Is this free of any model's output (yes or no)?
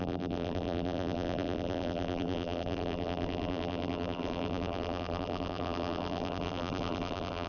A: no